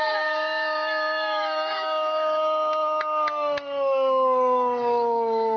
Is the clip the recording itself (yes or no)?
no